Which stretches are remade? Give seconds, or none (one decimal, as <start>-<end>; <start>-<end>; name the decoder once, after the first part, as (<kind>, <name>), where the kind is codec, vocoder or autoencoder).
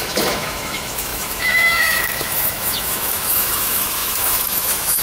0.0-5.0 (autoencoder, DAC-VAE)